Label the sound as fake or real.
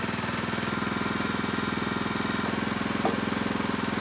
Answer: real